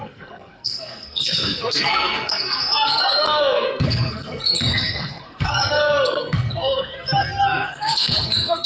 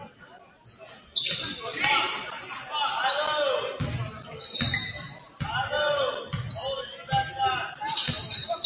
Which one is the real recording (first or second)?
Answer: second